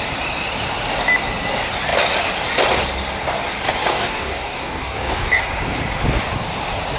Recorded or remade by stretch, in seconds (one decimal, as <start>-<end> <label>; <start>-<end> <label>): 0.0-3.9 recorded; 3.9-5.4 remade; 5.4-7.0 recorded